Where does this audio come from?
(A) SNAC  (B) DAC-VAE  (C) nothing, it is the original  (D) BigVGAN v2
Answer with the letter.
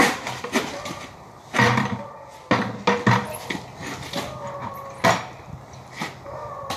C